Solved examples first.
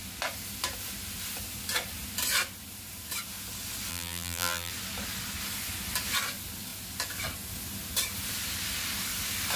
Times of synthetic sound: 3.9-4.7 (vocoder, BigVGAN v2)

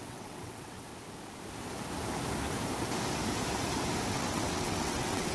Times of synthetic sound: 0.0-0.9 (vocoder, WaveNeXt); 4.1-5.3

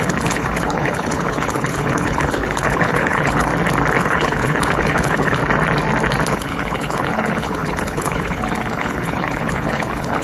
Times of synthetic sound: 0.0-3.5 (codec, HILCodec); 4.0-5.4; 6.3-10.2

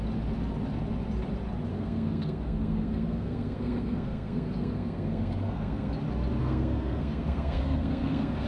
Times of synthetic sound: 1.7-5.9 (codec, SNAC); 6.4-8.5